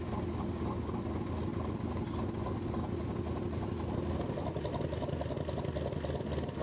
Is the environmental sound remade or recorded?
recorded